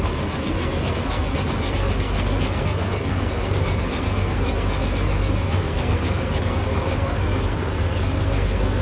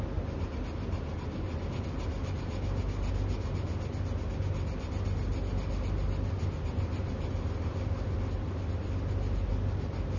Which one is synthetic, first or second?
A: first